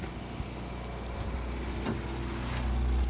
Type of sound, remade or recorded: recorded